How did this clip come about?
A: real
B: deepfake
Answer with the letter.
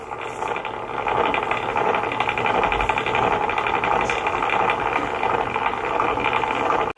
A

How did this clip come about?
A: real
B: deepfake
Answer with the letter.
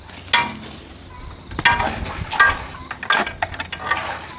A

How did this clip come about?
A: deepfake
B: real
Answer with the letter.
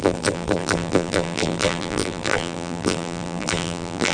A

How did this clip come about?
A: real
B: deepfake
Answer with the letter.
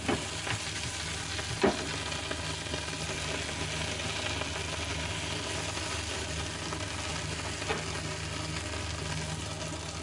A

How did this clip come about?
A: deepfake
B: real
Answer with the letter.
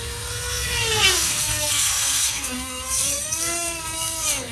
A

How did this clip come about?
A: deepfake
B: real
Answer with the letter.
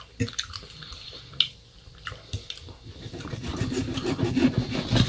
B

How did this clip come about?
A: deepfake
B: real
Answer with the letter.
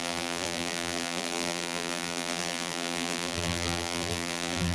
A